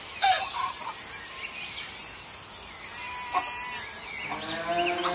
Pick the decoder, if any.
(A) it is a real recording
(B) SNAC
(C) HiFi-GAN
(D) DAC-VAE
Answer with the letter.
A